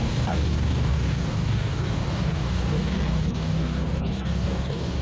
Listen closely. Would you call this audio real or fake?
fake